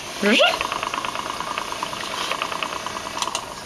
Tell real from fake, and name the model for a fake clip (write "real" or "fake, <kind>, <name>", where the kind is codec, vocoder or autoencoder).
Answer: real